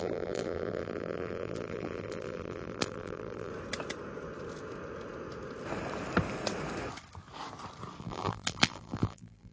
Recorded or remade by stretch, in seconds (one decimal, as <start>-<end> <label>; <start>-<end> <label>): 0.0-3.5 remade; 3.5-8.0 recorded; 8.0-9.5 remade